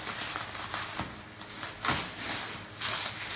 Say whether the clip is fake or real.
real